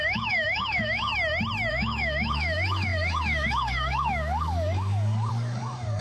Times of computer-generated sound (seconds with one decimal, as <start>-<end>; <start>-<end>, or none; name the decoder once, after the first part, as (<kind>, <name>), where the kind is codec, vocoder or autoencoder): 0.0-1.1 (codec, DAC); 1.7-6.0